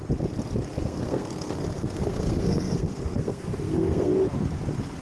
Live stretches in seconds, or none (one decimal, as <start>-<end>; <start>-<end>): 0.0-0.8; 4.1-5.0